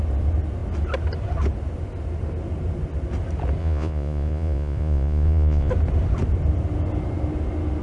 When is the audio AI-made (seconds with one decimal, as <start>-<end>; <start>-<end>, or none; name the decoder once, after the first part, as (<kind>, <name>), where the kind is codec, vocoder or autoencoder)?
3.6-5.7 (vocoder, Vocos)